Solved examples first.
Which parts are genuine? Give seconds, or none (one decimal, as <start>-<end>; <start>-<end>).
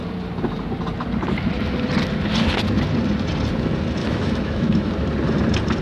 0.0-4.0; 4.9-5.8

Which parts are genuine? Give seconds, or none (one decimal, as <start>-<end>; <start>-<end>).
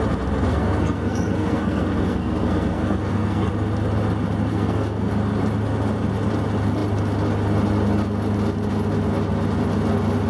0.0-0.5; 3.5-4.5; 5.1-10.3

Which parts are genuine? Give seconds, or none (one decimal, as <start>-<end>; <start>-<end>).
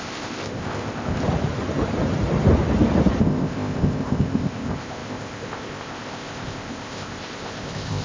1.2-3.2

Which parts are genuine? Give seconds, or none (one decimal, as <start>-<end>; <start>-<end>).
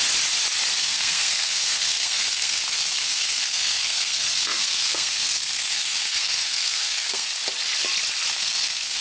0.0-0.8; 7.4-8.3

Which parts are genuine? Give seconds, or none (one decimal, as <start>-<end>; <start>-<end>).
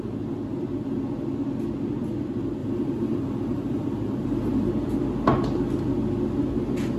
0.0-2.6; 4.7-7.0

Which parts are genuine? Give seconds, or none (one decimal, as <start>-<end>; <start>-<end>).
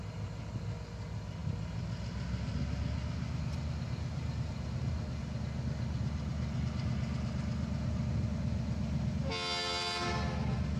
0.0-10.8